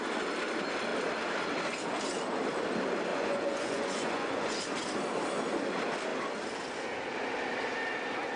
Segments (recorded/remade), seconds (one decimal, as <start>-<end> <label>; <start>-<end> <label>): 0.0-3.1 recorded; 3.1-4.7 remade; 4.7-8.4 recorded